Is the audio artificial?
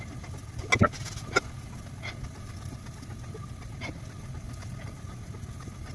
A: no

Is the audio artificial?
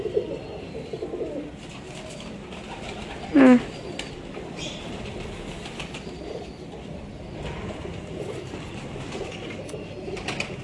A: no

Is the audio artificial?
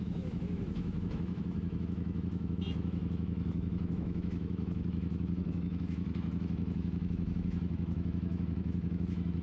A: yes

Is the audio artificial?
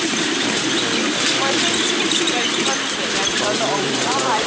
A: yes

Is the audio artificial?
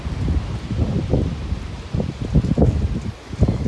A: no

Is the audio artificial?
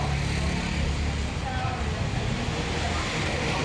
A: no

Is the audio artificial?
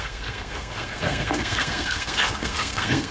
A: yes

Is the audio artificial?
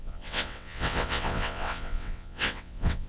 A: yes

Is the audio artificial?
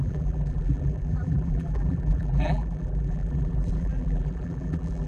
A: yes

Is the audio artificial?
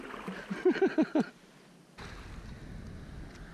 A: no